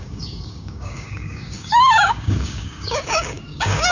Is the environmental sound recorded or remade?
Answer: remade